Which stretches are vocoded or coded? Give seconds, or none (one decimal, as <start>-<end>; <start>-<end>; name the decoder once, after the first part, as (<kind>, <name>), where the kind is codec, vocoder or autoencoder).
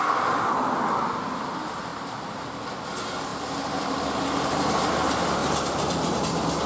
1.9-2.8 (vocoder, BigVGAN v2); 3.3-4.0; 5.4-6.2